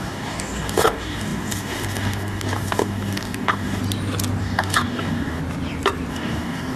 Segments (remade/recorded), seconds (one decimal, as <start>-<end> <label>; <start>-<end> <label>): 0.0-3.8 remade; 3.8-4.4 recorded; 4.4-5.4 remade; 5.4-6.1 recorded; 6.1-6.8 remade